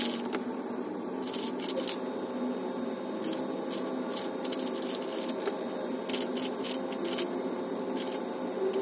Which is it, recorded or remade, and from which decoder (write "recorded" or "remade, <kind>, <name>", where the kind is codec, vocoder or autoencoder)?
recorded